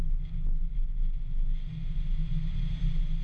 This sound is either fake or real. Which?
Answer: real